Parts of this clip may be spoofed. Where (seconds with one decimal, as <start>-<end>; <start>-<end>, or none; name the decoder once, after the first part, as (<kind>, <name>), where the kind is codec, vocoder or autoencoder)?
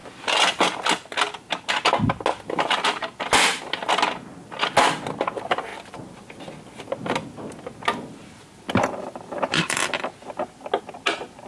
none